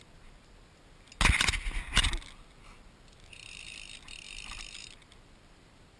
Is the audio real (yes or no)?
yes